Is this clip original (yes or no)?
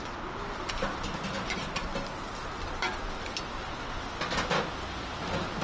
yes